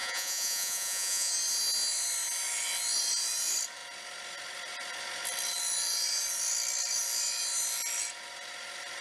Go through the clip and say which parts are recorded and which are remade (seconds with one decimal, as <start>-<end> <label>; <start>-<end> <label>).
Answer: 0.0-1.3 remade; 1.3-9.0 recorded